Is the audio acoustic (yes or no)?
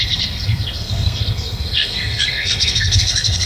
no